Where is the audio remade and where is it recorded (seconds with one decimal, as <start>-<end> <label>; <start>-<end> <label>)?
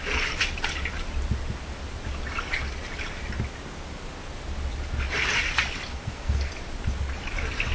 0.0-5.9 recorded; 5.9-6.5 remade; 6.5-7.7 recorded